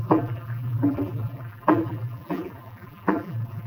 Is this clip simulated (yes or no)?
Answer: yes